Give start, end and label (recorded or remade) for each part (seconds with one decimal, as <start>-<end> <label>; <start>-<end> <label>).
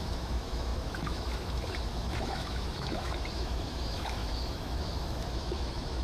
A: 0.0-6.0 remade